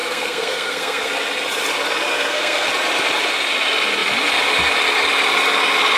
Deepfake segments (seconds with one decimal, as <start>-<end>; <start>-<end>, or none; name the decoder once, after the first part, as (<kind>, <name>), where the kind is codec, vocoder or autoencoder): 0.0-1.1 (codec, SNAC); 2.1-2.7